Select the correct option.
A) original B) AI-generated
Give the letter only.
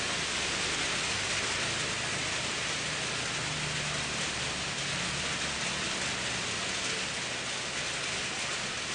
A